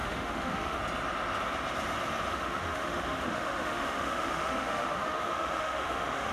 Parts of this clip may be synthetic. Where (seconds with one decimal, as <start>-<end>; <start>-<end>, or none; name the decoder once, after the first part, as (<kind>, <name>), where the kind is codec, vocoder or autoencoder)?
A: 0.0-0.8 (autoencoder, DAC-VAE); 2.3-6.3